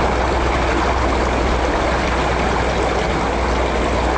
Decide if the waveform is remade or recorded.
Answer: recorded